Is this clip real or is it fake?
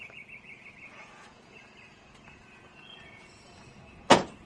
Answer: fake